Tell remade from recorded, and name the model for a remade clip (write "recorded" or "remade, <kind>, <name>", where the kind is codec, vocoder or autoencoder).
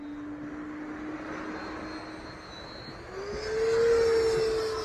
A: recorded